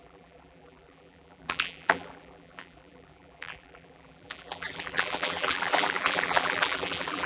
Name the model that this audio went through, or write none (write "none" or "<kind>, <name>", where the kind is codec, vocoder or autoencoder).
vocoder, BigVGAN v2